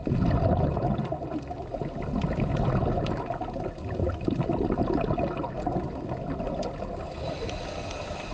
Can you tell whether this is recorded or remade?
recorded